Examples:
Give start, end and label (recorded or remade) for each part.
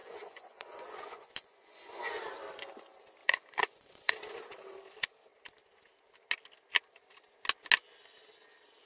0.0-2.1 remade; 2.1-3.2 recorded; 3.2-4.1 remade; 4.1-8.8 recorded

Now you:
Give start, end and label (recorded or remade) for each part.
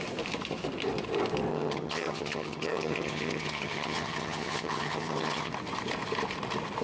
0.0-1.5 recorded; 1.5-5.5 remade; 5.5-6.8 recorded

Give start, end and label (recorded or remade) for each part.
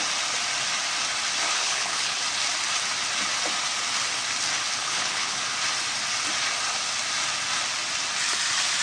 0.0-1.4 recorded; 1.4-2.2 remade; 2.2-4.8 recorded; 4.8-5.4 remade; 5.4-8.8 recorded